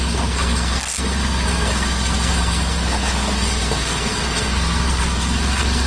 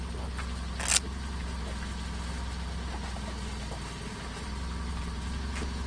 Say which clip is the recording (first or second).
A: second